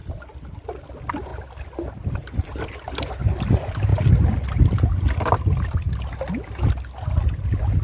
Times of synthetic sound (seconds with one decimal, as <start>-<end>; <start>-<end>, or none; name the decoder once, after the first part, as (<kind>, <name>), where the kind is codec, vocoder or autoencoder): none